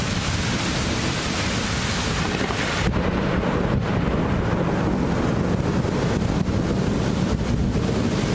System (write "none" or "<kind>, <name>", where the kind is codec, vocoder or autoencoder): none